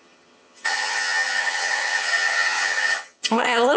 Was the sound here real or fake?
fake